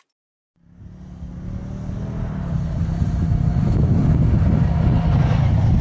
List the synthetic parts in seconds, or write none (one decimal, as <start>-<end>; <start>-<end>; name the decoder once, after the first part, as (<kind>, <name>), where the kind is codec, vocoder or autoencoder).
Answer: none